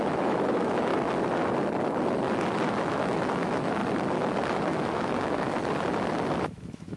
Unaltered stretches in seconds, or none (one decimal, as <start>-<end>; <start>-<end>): 0.9-2.8; 3.8-4.6; 5.6-6.4